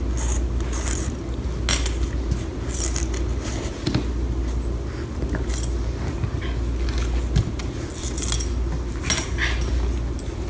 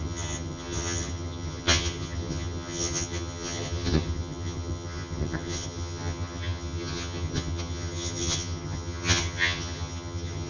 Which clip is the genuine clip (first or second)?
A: first